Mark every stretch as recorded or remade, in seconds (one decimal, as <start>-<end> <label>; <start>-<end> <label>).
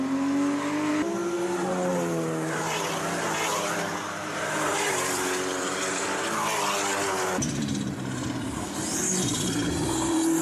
0.0-1.9 recorded; 1.9-6.0 remade; 6.0-9.0 recorded; 9.0-9.5 remade; 9.5-10.4 recorded